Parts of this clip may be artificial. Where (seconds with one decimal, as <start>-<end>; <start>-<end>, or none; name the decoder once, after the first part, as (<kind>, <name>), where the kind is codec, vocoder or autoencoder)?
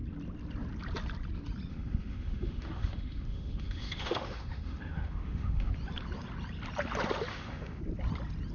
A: 1.7-5.7 (autoencoder, DAC-VAE); 7.3-7.8